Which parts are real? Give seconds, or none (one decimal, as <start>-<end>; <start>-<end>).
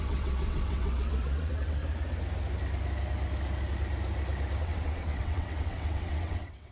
1.8-4.6